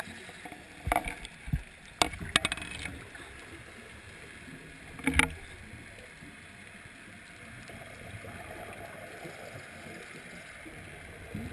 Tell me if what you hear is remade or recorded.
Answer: recorded